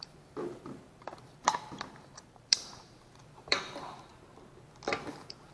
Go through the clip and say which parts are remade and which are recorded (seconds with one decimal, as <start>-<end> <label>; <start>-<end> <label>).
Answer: 0.0-4.1 remade; 4.1-5.1 recorded; 5.1-5.5 remade